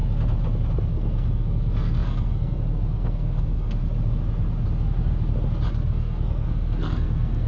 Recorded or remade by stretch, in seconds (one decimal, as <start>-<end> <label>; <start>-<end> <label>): 0.0-0.8 recorded; 0.8-3.8 remade; 3.8-5.7 recorded; 5.7-7.5 remade